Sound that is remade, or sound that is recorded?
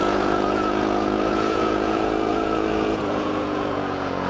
remade